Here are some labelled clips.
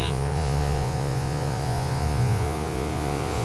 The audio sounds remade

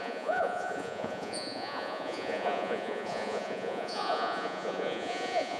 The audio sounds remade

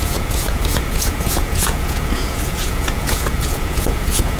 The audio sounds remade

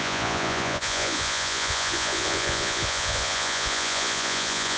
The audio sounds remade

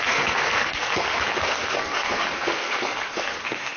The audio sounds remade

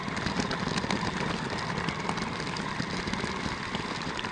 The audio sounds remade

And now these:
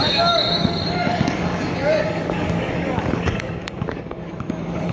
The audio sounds remade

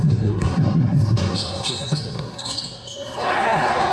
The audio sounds remade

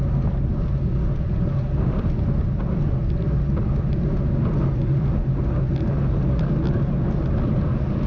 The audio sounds recorded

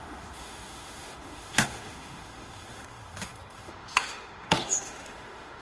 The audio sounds remade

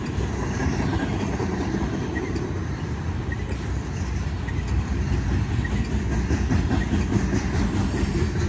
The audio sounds recorded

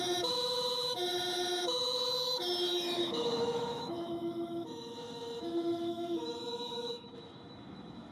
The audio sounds remade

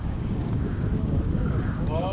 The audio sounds remade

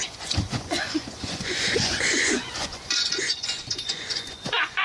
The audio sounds remade